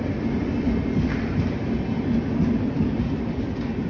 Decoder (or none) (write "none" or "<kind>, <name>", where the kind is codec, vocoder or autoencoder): none